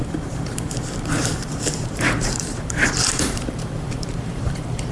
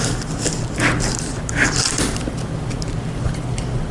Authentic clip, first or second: second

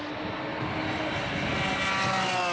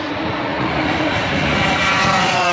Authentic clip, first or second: first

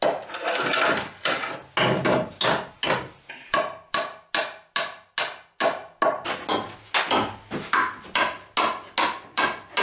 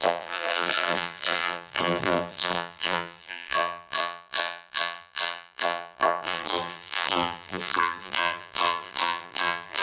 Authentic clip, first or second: first